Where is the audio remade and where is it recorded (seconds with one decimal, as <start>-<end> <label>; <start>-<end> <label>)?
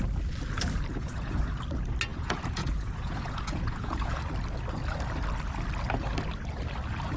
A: 0.0-0.9 recorded; 0.9-1.4 remade; 1.4-2.1 recorded; 2.1-4.2 remade; 4.2-7.2 recorded